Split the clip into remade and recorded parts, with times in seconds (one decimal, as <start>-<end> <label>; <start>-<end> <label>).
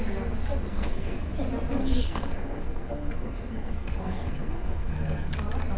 0.0-0.7 recorded; 0.7-1.3 remade; 1.3-1.8 recorded; 1.8-5.3 remade; 5.3-5.8 recorded